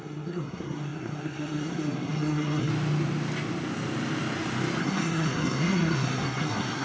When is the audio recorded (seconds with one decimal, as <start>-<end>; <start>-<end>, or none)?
2.7-4.8